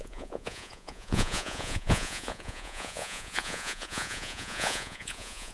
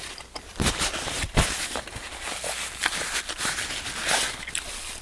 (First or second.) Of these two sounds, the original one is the second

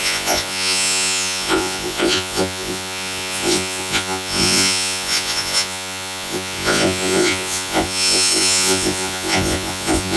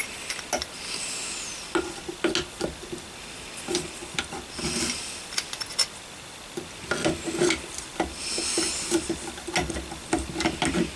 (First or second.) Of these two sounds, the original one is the second